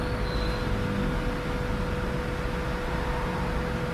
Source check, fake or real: real